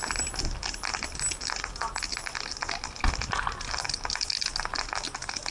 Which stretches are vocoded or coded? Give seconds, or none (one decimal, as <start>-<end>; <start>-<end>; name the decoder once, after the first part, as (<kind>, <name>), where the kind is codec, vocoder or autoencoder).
none